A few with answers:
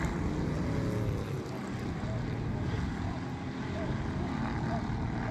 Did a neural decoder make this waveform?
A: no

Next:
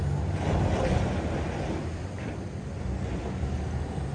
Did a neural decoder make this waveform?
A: no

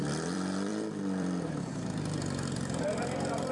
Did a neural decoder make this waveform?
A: yes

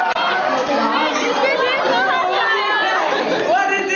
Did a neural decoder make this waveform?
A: no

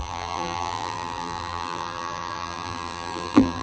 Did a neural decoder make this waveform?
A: yes